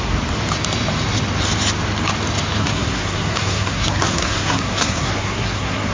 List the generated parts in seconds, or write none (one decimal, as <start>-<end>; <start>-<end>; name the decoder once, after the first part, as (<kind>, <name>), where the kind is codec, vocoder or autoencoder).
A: 2.6-5.9 (codec, SNAC)